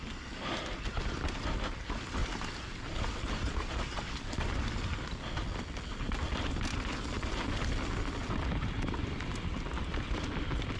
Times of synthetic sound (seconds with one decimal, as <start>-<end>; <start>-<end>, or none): 2.2-4.1